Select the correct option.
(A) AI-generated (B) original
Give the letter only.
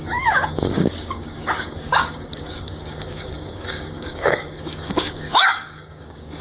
A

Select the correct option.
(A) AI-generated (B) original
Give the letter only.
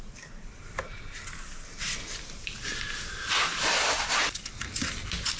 B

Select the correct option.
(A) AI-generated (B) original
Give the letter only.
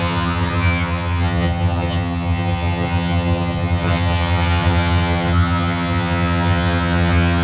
A